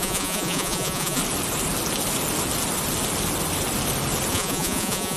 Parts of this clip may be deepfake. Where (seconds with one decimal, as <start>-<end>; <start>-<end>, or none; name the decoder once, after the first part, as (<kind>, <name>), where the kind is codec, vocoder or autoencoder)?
0.0-1.2 (vocoder, Vocos); 4.3-5.2